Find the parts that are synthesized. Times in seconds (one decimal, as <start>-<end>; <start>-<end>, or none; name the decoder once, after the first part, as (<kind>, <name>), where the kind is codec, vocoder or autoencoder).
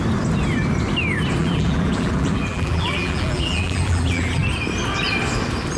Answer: 1.4-4.4 (vocoder, BigVGAN v2)